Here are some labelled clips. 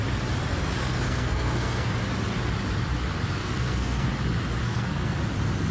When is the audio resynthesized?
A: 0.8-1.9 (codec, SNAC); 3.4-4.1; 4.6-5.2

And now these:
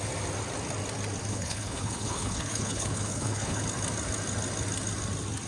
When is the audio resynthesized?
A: 1.3-3.6 (codec, HILCodec)

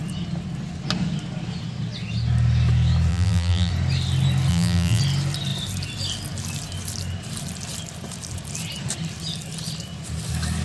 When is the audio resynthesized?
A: 3.1-3.7 (vocoder, BigVGAN v2); 4.5-5.0

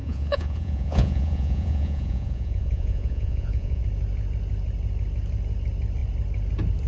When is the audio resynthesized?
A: 0.0-3.8 (vocoder, Vocos)

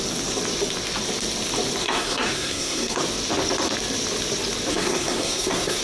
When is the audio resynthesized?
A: 1.8-3.0 (codec, SNAC); 4.7-5.8

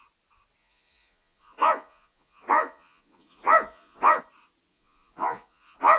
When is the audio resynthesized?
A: 0.6-4.2 (vocoder, Vocos); 4.7-6.0

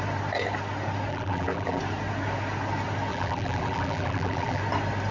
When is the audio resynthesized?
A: 1.1-1.8 (vocoder, BigVGAN v2); 3.1-4.6